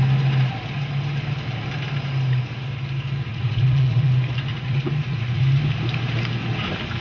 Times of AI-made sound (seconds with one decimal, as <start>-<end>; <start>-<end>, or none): 3.3-4.1; 4.5-5.4